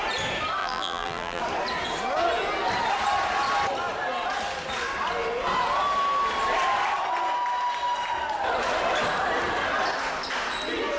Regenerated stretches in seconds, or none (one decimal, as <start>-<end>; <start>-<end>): 0.6-1.4

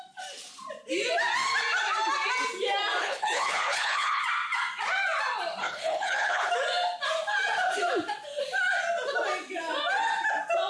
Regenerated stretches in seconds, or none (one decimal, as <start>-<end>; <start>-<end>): 3.0-4.2; 5.6-6.5

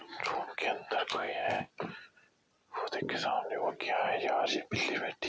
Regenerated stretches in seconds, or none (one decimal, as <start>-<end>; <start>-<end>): 1.1-1.7

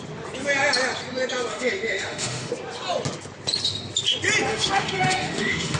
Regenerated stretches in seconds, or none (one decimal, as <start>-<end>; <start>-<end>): 1.5-2.5; 4.5-5.8

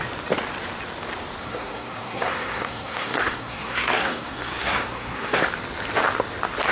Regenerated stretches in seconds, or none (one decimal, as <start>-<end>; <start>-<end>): 1.4-5.4

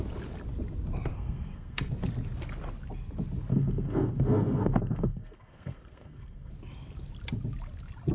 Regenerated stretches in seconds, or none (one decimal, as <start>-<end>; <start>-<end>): 1.1-1.8; 3.5-6.5

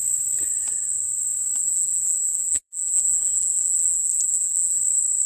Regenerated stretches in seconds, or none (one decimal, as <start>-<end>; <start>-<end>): 1.6-4.8

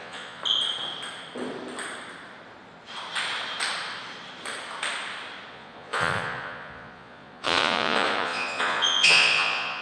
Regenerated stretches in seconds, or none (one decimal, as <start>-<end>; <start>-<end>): 0.0-0.4; 5.5-9.8